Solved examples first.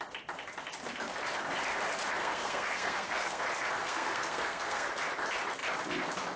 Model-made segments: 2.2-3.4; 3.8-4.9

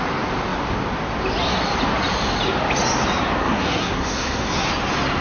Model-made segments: 3.4-4.7

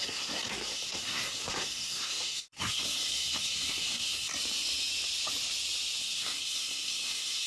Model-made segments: 0.0-4.3; 6.0-7.5

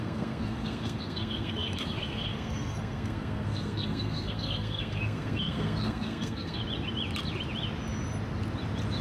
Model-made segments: 0.0-6.6

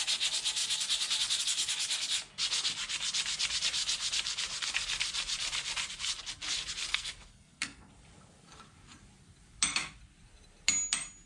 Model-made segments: 6.9-7.9

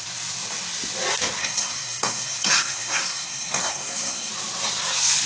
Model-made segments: 1.4-4.3

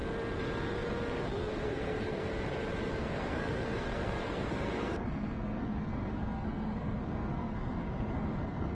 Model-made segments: 1.5-2.3; 2.9-8.7